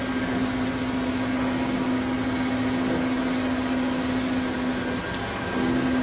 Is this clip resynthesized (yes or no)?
no